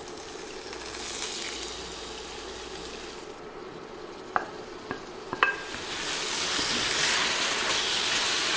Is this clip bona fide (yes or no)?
yes